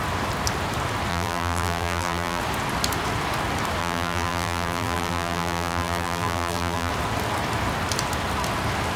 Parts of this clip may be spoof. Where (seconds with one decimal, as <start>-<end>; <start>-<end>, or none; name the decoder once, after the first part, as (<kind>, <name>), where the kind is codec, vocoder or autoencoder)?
1.1-2.4 (vocoder, BigVGAN v2); 3.8-6.9